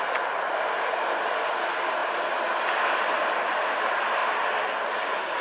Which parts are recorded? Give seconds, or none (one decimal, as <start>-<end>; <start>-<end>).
0.0-5.4